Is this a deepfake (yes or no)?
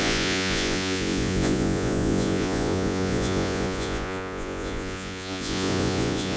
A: yes